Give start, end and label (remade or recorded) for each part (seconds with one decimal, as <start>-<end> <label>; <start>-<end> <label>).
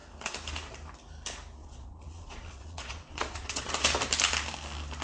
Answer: 0.0-1.6 recorded; 1.6-3.7 remade; 3.7-5.0 recorded